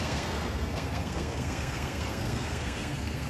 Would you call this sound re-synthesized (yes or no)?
yes